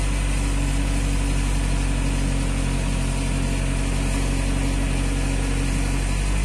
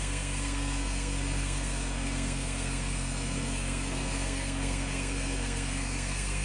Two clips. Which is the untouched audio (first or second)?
first